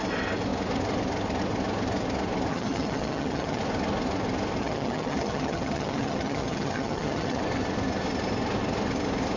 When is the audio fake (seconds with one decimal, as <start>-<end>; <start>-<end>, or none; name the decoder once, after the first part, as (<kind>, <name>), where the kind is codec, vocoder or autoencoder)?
2.5-3.6 (vocoder, HiFi-GAN); 4.6-7.4